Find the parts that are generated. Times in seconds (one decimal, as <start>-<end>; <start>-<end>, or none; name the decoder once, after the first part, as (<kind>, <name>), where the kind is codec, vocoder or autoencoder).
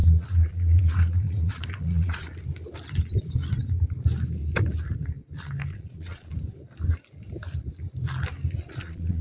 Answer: 0.0-2.3 (vocoder, Vocos); 5.7-6.3; 8.7-9.2